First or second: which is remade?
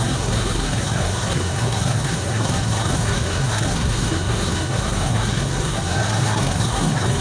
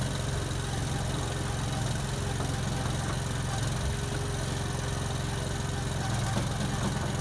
first